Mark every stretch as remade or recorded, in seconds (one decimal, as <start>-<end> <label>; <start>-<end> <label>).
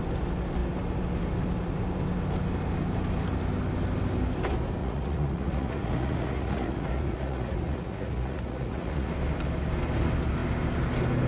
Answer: 0.0-4.8 recorded; 4.8-9.1 remade; 9.1-11.3 recorded